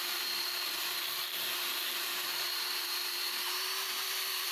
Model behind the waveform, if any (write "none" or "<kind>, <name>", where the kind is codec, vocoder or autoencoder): vocoder, BigVGAN v2